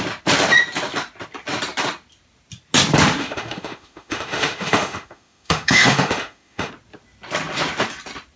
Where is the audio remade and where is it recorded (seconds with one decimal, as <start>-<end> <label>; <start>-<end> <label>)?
0.0-3.2 recorded; 3.2-6.7 remade; 6.7-8.4 recorded